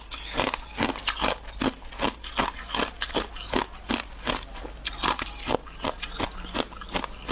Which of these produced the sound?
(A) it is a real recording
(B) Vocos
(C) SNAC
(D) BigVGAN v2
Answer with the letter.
A